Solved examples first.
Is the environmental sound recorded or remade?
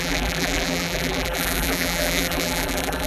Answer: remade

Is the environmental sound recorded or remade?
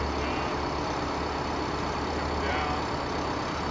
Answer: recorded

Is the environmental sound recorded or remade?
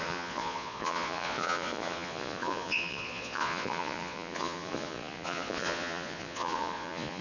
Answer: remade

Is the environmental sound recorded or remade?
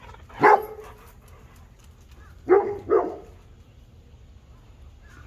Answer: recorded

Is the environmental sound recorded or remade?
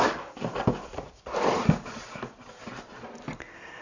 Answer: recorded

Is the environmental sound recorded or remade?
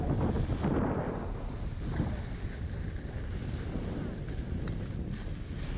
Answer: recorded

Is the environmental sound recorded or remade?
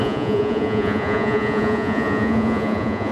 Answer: remade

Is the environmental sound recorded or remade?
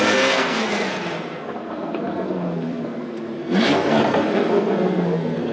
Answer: remade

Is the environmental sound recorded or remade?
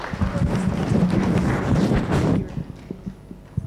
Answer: recorded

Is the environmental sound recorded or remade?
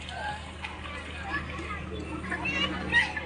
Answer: recorded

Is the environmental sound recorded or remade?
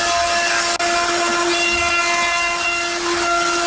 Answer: recorded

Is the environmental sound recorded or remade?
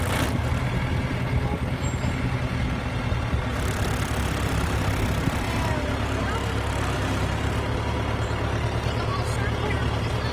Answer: recorded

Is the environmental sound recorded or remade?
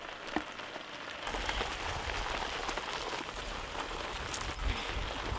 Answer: recorded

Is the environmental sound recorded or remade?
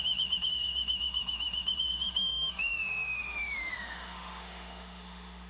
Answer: remade